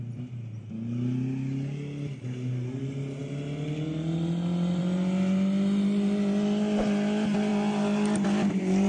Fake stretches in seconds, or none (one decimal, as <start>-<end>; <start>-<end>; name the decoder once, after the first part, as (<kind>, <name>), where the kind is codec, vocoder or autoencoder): none